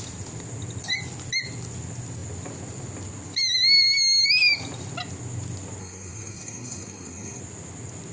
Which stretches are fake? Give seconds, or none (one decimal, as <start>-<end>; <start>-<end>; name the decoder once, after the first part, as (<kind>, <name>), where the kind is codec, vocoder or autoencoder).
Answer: 5.8-7.4 (codec, SNAC)